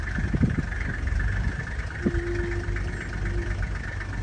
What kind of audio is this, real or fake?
real